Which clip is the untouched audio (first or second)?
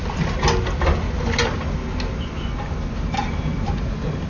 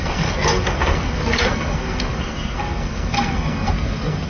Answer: first